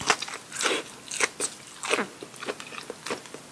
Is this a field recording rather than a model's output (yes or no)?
yes